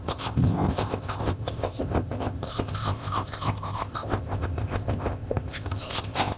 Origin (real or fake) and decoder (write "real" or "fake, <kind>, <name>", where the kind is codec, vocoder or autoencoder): fake, codec, ZipCodec